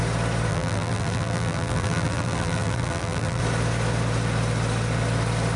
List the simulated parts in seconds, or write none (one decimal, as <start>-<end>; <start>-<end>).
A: 0.5-3.4